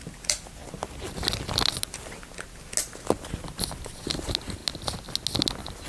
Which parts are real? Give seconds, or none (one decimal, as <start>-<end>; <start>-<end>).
0.0-5.9